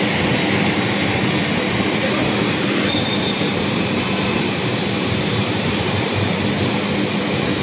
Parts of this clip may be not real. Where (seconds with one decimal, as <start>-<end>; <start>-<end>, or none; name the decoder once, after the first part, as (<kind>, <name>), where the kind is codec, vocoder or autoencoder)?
2.0-6.5 (vocoder, BigVGAN v2)